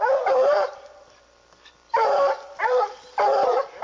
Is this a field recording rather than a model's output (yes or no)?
no